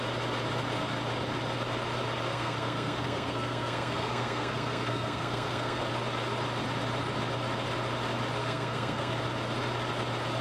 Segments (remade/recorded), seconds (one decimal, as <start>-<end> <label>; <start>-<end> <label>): 0.0-2.3 recorded; 2.3-5.8 remade; 5.8-8.4 recorded; 8.4-9.1 remade; 9.1-10.4 recorded